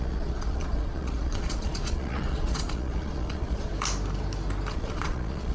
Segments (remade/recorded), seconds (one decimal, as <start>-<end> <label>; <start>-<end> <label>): 0.0-3.7 remade; 3.7-4.7 recorded; 4.7-5.5 remade